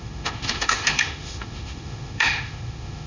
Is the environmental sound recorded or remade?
remade